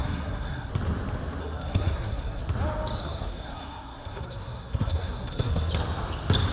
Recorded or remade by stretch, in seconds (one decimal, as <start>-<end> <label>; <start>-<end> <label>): 0.0-0.7 remade; 0.7-1.4 recorded; 1.4-2.4 remade; 2.4-3.0 recorded; 3.0-5.7 remade; 5.7-6.5 recorded

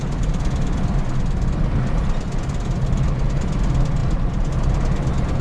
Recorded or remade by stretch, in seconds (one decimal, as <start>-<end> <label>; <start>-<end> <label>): 0.0-5.4 recorded

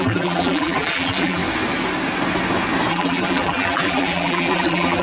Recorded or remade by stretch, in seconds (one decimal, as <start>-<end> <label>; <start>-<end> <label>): 0.0-1.4 remade; 1.4-2.9 recorded; 2.9-5.0 remade

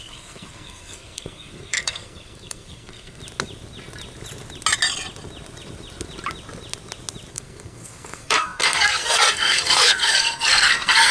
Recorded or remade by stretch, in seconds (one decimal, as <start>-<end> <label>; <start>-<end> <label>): 0.0-3.2 remade; 3.2-7.3 recorded; 7.3-11.1 remade

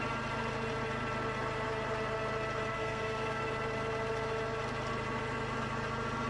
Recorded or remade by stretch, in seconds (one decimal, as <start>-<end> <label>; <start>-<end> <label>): 0.0-2.7 recorded; 2.7-3.4 remade; 3.4-6.3 recorded